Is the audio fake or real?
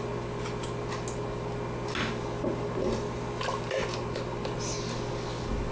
real